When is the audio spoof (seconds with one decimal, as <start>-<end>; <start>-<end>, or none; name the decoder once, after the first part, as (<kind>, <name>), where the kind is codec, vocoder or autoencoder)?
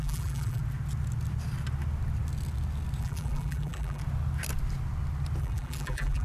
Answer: 0.0-0.6 (vocoder, BigVGAN v2); 3.0-4.0; 5.4-6.2